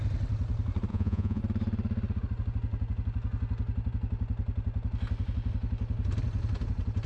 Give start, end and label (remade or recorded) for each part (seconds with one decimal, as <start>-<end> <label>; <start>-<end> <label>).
0.0-0.9 recorded; 0.9-1.4 remade; 1.4-7.1 recorded